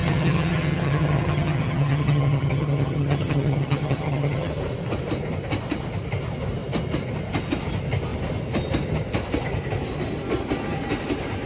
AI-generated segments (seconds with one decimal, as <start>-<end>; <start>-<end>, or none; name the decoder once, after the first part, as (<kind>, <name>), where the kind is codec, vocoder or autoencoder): 0.0-4.5 (vocoder, HiFi-GAN)